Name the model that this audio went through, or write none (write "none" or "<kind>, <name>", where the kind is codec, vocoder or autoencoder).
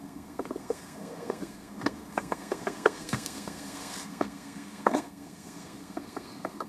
codec, SNAC